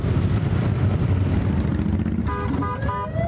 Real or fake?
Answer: real